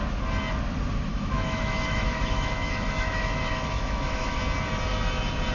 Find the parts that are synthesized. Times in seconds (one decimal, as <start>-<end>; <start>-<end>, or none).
1.1-4.4